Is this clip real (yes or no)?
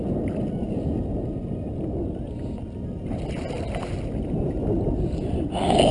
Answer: yes